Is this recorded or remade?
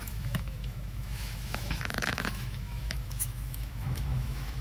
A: remade